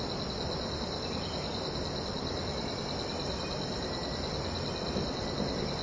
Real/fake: real